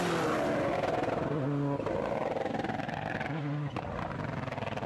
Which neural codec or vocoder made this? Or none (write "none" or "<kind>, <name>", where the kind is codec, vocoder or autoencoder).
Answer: none